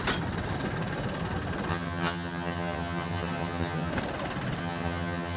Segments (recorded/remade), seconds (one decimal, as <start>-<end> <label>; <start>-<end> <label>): 0.0-1.7 recorded; 1.7-3.9 remade; 3.9-4.6 recorded; 4.6-5.4 remade